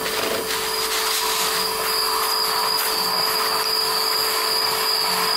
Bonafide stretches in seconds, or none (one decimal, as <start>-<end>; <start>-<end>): 0.0-5.4